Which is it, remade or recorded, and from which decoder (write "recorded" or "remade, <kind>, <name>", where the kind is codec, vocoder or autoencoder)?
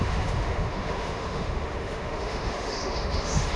remade, autoencoder, DAC-VAE